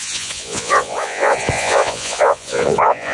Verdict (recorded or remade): remade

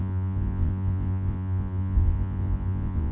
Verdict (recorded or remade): remade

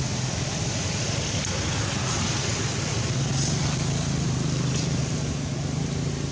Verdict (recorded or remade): recorded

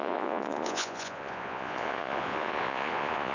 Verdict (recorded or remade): remade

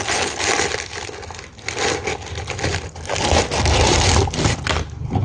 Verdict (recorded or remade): recorded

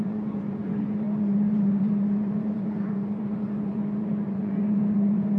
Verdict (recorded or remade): remade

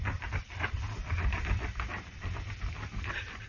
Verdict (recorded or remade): recorded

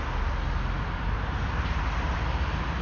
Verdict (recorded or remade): recorded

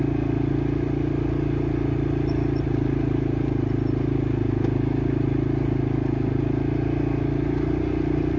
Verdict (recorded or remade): recorded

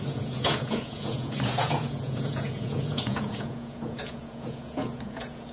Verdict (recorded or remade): remade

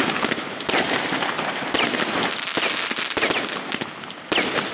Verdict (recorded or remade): recorded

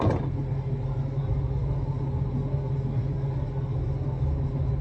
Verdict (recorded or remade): recorded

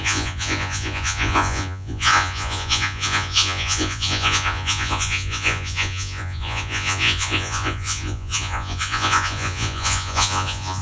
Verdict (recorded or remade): remade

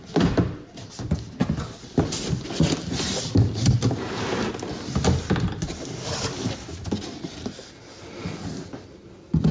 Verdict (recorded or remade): recorded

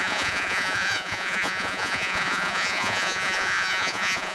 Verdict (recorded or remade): remade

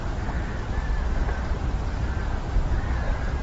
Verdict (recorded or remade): recorded